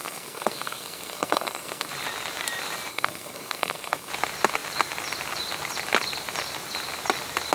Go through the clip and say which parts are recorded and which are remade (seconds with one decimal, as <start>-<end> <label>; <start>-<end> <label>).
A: 0.0-1.9 remade; 1.9-2.9 recorded; 2.9-4.1 remade; 4.1-7.5 recorded